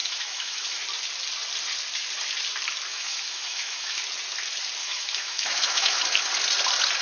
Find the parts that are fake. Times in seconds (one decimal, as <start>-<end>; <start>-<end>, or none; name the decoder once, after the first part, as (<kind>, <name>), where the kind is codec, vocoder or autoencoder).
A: 0.0-0.8 (autoencoder, DAC-VAE); 2.9-4.0; 4.8-6.0